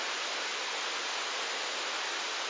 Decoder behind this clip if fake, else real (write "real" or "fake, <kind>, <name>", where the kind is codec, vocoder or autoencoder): real